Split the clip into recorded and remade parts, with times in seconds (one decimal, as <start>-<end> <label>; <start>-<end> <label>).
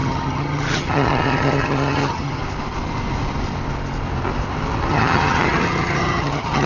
0.0-2.4 remade; 2.4-4.9 recorded; 4.9-6.7 remade